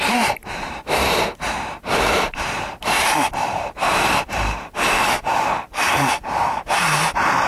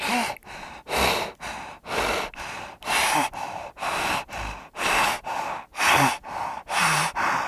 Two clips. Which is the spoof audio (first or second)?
first